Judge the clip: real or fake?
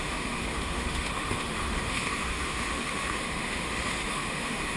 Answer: fake